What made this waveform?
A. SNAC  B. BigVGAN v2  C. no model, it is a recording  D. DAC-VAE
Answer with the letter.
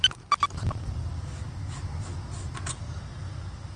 C